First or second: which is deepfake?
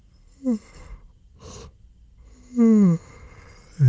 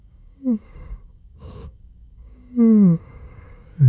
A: second